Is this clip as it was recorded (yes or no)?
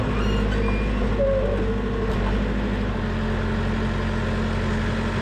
yes